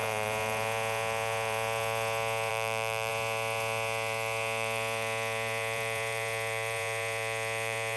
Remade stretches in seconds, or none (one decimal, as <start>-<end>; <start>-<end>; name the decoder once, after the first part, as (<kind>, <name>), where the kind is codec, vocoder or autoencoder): 0.0-2.5 (vocoder, Vocos); 3.1-8.0